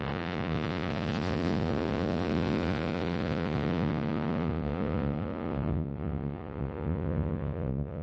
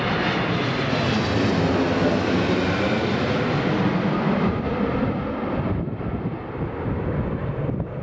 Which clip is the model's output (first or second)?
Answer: first